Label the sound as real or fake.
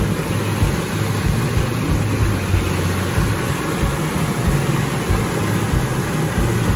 real